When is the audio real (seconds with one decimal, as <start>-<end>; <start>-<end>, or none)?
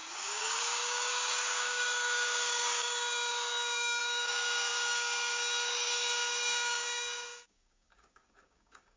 none